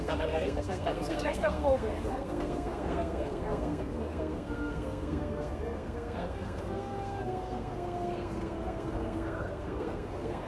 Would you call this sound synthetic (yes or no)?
yes